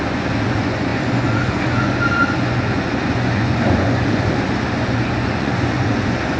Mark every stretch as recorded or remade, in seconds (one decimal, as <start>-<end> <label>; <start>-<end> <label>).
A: 0.0-6.4 remade